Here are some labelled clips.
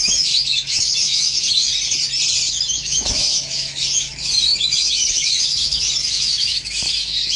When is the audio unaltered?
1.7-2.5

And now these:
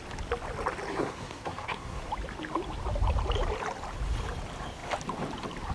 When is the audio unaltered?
0.0-0.9; 2.1-5.7

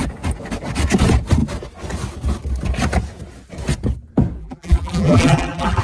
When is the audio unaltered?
0.0-4.4

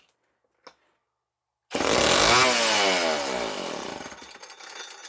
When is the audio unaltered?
0.0-5.1